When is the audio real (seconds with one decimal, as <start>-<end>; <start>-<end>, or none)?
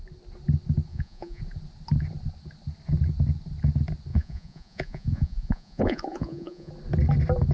0.0-0.9; 1.4-4.1; 6.7-7.5